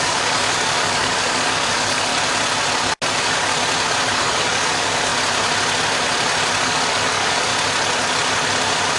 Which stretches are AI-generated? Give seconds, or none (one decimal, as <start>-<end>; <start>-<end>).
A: 0.0-2.1; 3.1-3.5; 4.1-5.1; 6.6-7.5